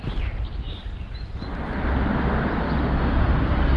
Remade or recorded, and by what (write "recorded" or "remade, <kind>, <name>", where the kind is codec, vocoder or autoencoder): recorded